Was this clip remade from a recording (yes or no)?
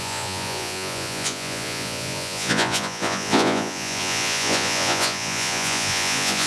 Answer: yes